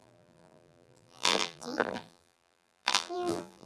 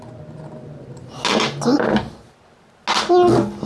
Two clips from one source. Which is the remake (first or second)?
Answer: first